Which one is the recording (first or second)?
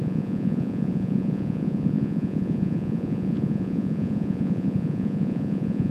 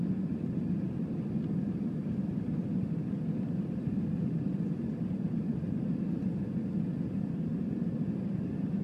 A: second